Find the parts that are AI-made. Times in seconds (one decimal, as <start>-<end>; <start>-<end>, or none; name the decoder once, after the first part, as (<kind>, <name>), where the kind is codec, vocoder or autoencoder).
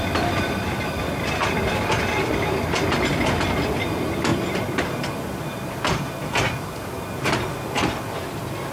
none